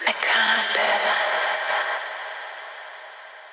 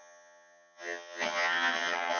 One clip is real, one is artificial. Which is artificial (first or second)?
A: second